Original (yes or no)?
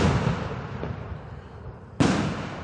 yes